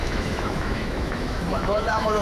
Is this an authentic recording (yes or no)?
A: no